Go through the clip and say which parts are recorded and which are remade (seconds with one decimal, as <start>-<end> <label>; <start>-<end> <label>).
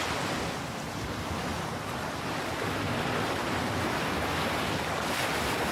0.0-5.7 remade